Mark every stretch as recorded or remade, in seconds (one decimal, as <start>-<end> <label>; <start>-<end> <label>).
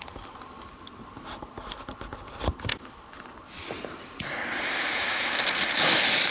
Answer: 0.0-6.3 recorded